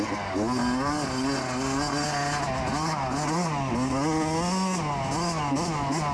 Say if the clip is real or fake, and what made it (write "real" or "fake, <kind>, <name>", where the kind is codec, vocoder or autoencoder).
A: real